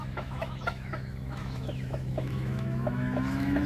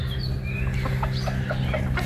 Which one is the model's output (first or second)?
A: first